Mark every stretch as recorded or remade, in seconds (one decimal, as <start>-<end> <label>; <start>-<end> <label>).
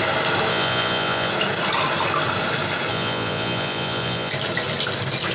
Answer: 0.0-0.5 recorded; 0.5-1.3 remade; 1.3-2.9 recorded; 2.9-4.3 remade; 4.3-5.3 recorded